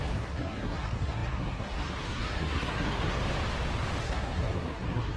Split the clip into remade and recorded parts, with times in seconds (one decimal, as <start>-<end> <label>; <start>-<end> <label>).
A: 0.0-3.2 remade; 3.2-4.0 recorded; 4.0-5.2 remade